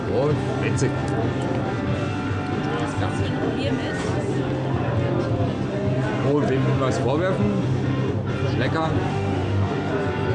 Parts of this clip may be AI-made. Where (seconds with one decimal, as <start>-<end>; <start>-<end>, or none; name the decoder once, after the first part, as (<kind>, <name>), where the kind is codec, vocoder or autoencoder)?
9.1-9.9 (autoencoder, DAC-VAE)